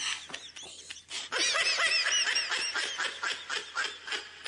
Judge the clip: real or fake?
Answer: real